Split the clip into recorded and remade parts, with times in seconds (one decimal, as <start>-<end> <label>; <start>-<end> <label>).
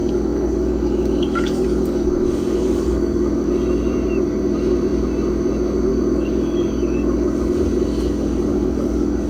0.0-3.5 remade; 3.5-5.9 recorded; 5.9-7.4 remade; 7.4-8.5 recorded; 8.5-9.3 remade